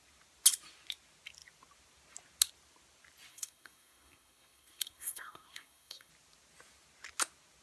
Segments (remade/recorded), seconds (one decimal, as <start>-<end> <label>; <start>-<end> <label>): 0.0-3.3 recorded; 3.3-6.1 remade; 6.1-7.6 recorded